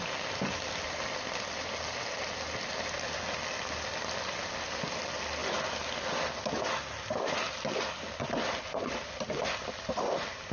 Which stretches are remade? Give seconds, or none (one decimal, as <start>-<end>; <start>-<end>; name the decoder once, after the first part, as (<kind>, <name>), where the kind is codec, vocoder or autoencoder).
none

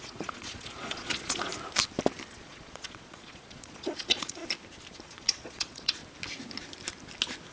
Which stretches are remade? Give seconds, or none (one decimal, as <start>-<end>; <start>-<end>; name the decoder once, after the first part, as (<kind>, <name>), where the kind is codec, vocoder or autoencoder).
0.0-1.5 (vocoder, Vocos); 2.3-4.4; 5.0-6.0

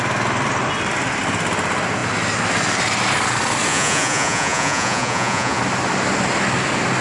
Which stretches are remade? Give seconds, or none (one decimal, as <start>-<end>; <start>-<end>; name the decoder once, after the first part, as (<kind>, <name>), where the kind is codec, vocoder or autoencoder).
3.7-5.6 (vocoder, Vocos)

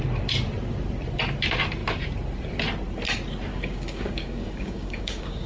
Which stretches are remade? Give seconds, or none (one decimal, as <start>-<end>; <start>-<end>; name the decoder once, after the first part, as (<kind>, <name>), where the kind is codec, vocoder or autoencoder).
3.5-5.5 (codec, DAC)

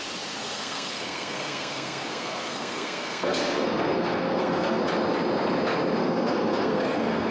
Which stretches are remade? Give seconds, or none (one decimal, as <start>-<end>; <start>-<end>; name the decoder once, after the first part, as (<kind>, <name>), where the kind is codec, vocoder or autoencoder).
0.4-4.8 (codec, SNAC); 6.0-7.3

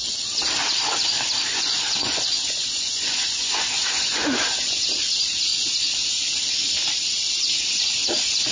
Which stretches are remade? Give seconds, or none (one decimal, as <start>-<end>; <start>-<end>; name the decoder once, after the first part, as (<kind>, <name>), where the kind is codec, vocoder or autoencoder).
1.5-5.1 (vocoder, Vocos)